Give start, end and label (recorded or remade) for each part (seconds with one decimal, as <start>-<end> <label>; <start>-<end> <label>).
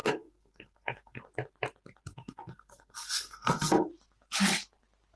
0.0-1.2 remade; 1.2-2.1 recorded; 2.1-3.9 remade; 3.9-5.2 recorded